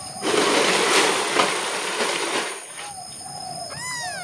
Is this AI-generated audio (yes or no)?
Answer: no